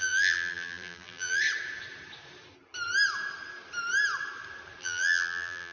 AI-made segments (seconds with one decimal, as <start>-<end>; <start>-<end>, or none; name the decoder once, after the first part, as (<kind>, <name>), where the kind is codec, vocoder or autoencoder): 0.0-1.4 (vocoder, BigVGAN v2); 4.8-5.7